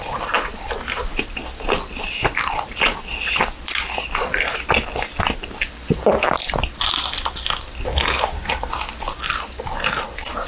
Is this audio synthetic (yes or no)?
no